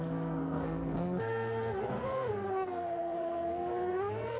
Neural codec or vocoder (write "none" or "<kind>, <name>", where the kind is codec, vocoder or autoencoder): codec, SNAC